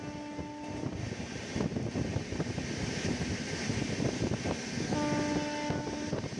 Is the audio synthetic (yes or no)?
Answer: no